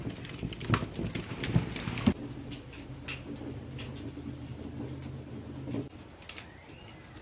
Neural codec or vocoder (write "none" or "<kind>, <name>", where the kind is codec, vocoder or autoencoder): none